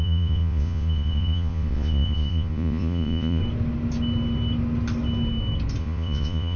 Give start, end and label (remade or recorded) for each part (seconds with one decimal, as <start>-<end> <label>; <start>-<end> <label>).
0.0-3.4 remade; 3.4-5.8 recorded; 5.8-6.6 remade